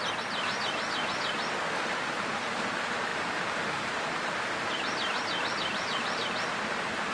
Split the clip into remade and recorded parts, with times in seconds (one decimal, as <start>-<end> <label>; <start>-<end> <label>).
0.0-3.1 recorded; 3.1-4.2 remade; 4.2-7.1 recorded